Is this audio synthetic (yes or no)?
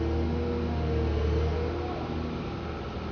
no